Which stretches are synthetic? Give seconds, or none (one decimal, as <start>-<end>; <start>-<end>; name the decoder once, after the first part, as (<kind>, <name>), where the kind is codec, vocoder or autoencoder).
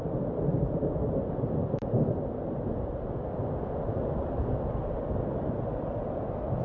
none